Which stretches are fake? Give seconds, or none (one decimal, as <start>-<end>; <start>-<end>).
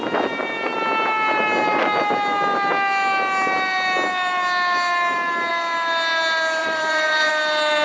6.6-7.3